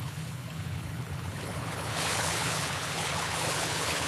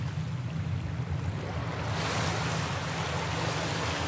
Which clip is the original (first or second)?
second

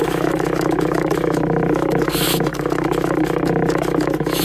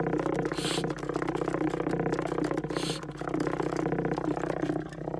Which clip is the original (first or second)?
second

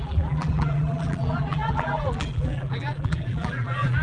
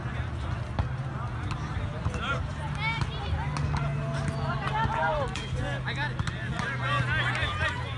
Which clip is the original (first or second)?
second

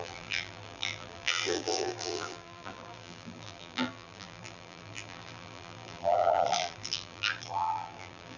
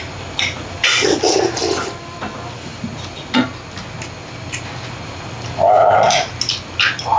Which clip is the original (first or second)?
second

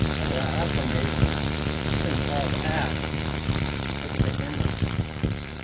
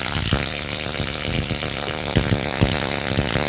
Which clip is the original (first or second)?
second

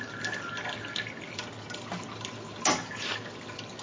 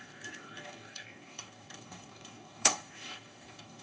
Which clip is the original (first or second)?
first